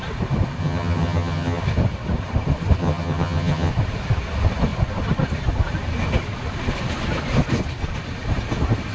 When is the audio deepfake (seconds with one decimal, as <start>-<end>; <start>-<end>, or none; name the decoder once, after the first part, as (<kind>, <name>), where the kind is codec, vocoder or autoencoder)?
0.6-1.6 (vocoder, HiFi-GAN); 2.8-3.7